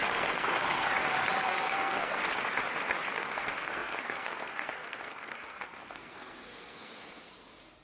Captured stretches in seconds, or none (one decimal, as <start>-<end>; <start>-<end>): 0.9-1.4; 2.2-3.1